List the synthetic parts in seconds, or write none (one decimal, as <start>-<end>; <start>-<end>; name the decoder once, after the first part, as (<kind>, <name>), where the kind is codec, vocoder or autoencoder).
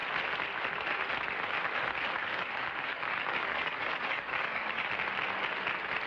2.2-4.9 (codec, DAC)